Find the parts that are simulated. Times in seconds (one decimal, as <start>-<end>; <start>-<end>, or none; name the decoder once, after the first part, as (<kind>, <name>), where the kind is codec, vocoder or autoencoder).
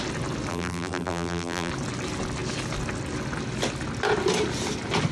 0.5-1.7 (vocoder, BigVGAN v2)